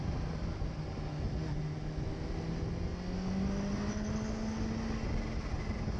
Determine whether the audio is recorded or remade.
recorded